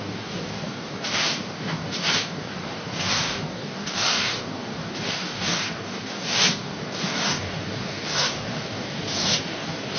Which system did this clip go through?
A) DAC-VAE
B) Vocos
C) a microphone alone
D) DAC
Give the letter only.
D